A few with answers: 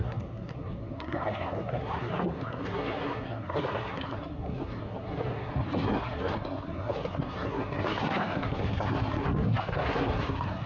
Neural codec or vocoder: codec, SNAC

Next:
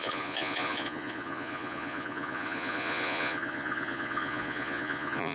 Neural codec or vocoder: vocoder, Vocos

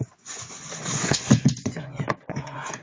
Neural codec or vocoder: vocoder, Vocos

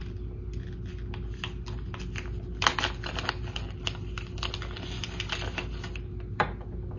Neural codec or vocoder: none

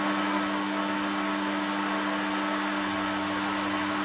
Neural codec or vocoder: none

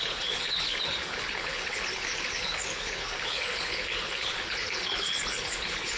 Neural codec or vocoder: codec, HILCodec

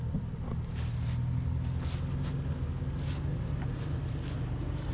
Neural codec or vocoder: none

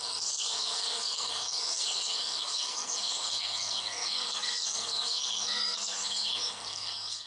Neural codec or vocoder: codec, SNAC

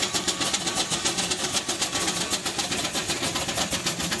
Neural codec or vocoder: none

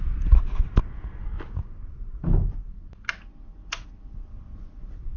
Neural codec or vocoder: none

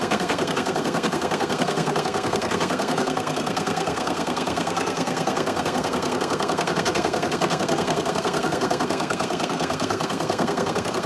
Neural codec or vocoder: codec, SNAC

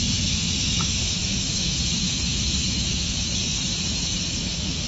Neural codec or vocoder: autoencoder, DAC-VAE